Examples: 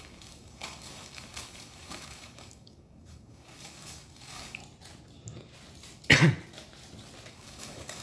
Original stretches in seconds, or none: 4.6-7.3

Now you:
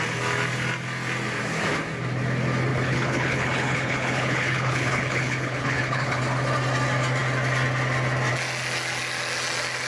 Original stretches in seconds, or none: 0.0-2.7; 6.2-9.9